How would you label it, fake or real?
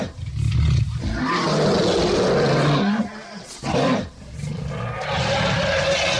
real